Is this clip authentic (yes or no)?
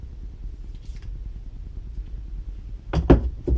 yes